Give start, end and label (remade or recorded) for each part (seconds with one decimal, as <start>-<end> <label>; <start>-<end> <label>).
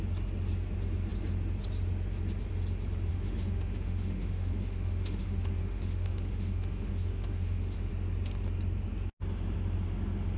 0.0-3.1 recorded; 3.1-7.9 remade; 7.9-10.4 recorded